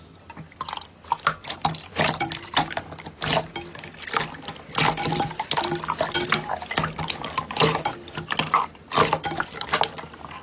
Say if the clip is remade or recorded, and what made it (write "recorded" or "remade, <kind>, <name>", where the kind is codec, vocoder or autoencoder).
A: recorded